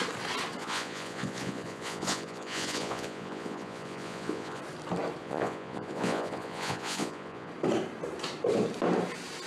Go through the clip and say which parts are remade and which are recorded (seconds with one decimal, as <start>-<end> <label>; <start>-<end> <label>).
0.0-0.6 recorded; 0.6-4.6 remade; 4.6-5.2 recorded; 5.2-7.5 remade; 7.5-9.5 recorded